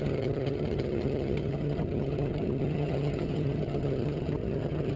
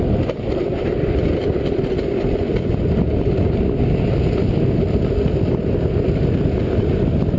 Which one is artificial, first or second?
first